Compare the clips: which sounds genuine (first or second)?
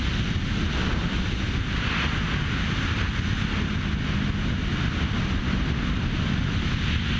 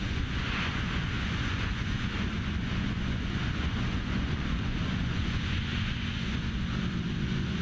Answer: first